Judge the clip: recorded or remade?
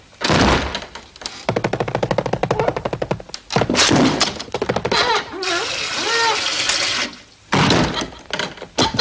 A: recorded